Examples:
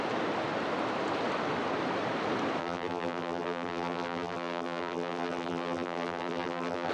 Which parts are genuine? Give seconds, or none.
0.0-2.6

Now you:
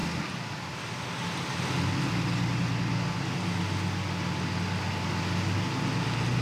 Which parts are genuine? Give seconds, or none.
0.0-6.4

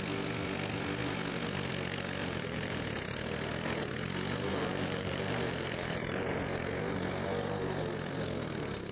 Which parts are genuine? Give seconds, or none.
0.0-2.2; 3.0-4.5; 6.4-8.9